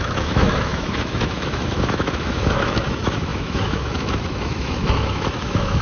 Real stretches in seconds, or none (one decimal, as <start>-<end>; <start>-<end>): none